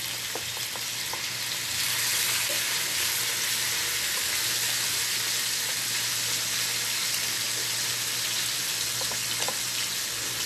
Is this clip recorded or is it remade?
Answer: recorded